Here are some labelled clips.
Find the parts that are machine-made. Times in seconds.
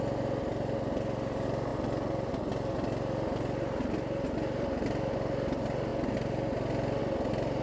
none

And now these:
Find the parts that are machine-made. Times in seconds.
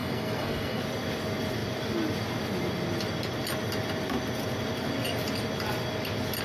0.0-0.8 (codec, SNAC)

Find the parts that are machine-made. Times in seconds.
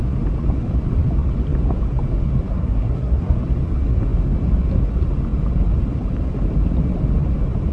2.5-3.3 (codec, SNAC)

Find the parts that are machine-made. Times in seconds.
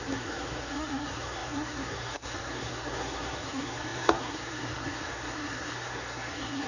0.0-6.7 (codec, SNAC)